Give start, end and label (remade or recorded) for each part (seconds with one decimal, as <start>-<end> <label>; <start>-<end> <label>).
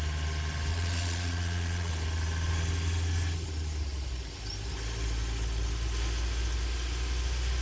0.0-0.7 recorded; 0.7-1.9 remade; 1.9-7.6 recorded